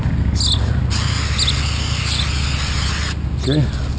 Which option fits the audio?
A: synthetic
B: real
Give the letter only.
B